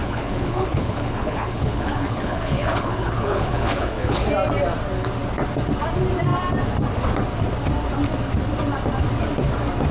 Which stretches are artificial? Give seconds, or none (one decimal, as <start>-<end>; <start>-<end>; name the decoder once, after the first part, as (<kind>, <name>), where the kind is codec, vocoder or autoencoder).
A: 0.0-4.3 (codec, HILCodec)